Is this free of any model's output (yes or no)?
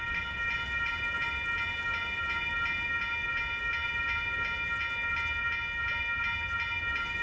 yes